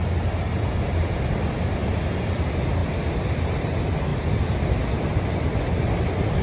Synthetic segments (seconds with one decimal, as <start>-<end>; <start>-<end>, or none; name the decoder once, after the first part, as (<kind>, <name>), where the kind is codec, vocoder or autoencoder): none